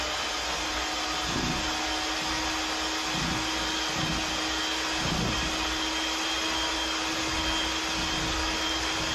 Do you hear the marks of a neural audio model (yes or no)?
no